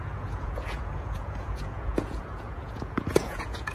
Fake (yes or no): yes